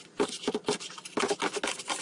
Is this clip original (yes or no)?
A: yes